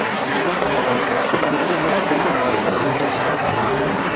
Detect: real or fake fake